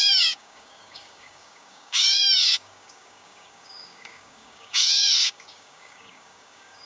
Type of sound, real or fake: fake